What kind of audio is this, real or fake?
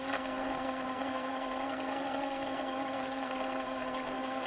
fake